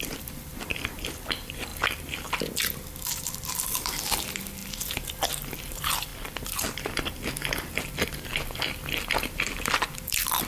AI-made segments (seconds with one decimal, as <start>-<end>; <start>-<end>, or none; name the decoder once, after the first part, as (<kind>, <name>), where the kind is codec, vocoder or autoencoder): 0.0-6.1 (vocoder, BigVGAN v2); 9.1-10.5